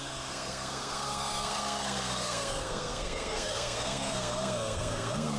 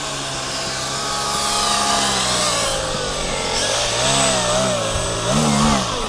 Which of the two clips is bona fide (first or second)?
second